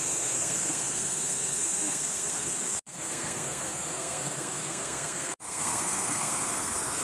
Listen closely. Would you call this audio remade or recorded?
remade